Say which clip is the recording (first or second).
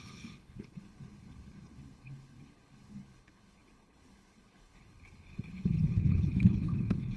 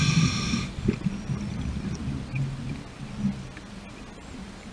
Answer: second